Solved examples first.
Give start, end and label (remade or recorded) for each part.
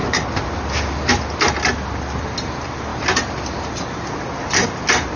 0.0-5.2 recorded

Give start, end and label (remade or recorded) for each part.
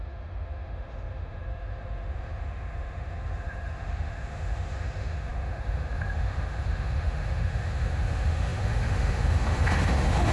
0.0-10.3 remade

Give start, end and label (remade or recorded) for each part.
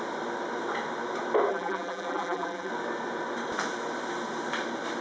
0.0-1.5 recorded; 1.5-2.7 remade; 2.7-5.0 recorded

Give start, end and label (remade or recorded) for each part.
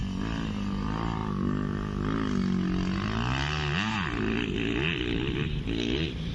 0.0-6.3 recorded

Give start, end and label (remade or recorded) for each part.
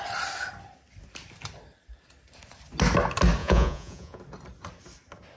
0.0-3.4 recorded; 3.4-4.2 remade; 4.2-5.4 recorded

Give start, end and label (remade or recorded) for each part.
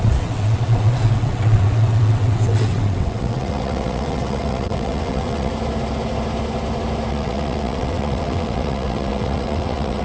0.0-5.5 remade; 5.5-7.1 recorded; 7.1-10.0 remade